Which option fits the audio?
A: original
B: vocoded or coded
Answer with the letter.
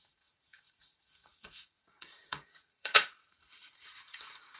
B